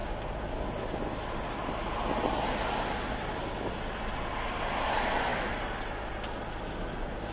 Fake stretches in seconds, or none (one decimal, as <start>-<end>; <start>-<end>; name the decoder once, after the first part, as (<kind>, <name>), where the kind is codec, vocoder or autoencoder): none

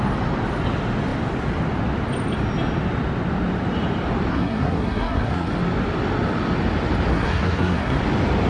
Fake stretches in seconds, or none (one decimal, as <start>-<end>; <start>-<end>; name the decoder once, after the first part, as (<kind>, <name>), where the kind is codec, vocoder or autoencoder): 4.3-5.5 (codec, SNAC); 7.1-8.0

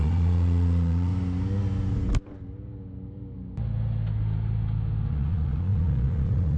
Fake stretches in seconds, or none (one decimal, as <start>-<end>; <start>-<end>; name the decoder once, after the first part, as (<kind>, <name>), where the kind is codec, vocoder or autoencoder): 0.0-1.1 (vocoder, Vocos); 5.1-6.6

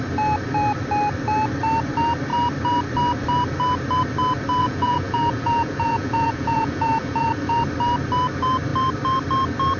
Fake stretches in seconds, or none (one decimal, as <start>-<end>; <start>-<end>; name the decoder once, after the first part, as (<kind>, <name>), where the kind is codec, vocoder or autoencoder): 4.6-7.6 (vocoder, Vocos)

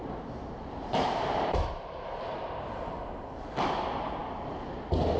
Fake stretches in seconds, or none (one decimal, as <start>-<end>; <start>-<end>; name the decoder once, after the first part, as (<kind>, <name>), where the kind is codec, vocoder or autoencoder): 0.0-3.0 (vocoder, BigVGAN v2)

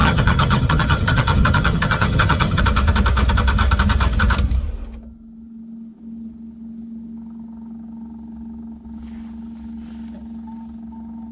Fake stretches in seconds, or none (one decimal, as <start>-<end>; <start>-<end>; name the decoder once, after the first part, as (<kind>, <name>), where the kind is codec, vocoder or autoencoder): 0.0-2.6 (vocoder, HiFi-GAN)

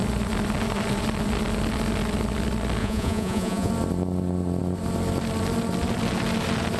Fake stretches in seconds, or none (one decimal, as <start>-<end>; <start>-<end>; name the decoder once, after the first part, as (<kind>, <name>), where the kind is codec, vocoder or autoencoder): 2.8-3.7 (vocoder, Vocos)